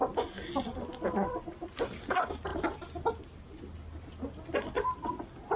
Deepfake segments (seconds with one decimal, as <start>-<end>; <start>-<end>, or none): none